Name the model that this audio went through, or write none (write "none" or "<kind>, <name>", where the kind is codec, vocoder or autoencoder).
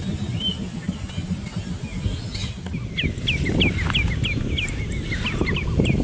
none